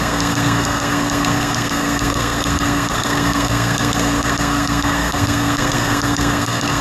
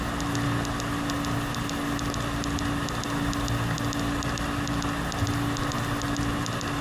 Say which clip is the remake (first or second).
first